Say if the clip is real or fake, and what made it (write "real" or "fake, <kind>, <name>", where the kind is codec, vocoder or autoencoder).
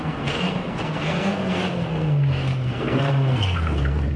fake, codec, SNAC